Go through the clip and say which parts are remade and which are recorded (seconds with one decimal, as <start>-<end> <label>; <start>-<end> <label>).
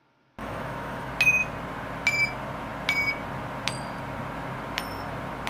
0.0-0.4 recorded; 0.4-1.1 remade; 1.1-5.5 recorded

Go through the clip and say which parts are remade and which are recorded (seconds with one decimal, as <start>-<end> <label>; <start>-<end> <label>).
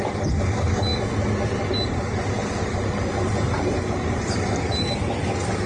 0.0-5.7 recorded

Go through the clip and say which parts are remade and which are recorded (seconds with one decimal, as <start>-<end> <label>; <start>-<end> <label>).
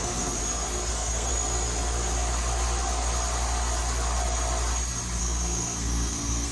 0.0-0.4 remade; 0.4-0.9 recorded; 0.9-1.3 remade; 1.3-5.2 recorded; 5.2-6.5 remade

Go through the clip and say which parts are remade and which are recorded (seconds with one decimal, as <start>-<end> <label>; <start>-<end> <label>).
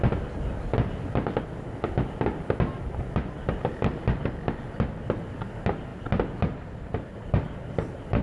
0.0-8.2 recorded